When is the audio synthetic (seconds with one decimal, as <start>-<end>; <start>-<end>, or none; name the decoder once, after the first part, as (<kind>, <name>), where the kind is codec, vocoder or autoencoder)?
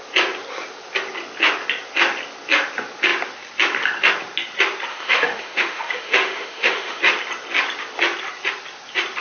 4.9-7.0 (autoencoder, DAC-VAE)